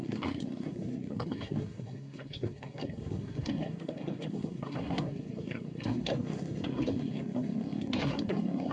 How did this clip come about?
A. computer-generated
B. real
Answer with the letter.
A